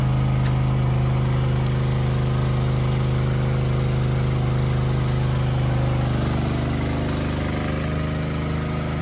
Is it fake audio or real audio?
real